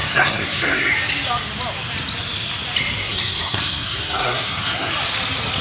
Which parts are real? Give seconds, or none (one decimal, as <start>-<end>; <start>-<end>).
0.9-3.0; 4.9-5.6